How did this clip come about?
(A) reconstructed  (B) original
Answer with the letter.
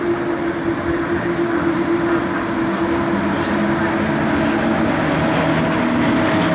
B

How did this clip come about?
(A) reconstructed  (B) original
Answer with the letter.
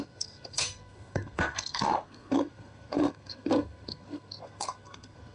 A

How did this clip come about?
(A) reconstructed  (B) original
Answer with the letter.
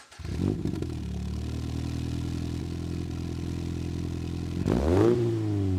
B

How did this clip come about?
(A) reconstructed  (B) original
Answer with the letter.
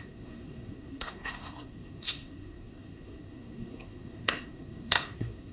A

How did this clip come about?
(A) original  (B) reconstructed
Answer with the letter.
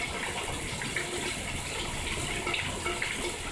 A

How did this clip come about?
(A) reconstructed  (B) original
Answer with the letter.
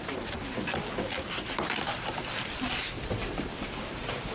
B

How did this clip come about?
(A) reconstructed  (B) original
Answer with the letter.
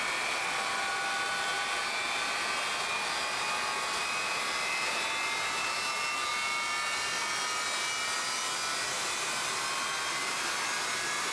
B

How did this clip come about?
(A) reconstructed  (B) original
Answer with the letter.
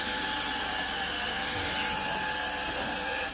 B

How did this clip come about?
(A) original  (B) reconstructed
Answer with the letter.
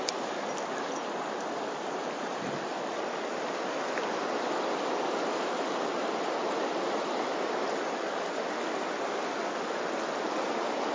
A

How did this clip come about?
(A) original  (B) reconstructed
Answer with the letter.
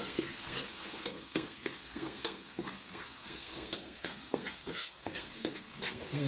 B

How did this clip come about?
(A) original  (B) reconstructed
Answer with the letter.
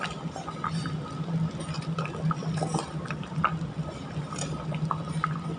A